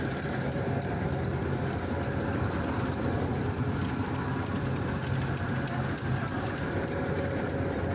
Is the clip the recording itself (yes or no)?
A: no